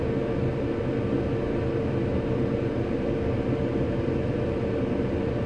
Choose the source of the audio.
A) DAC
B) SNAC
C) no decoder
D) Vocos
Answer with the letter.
C